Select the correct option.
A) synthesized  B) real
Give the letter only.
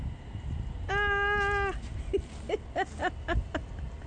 B